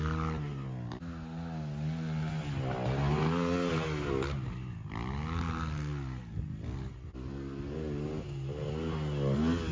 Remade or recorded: recorded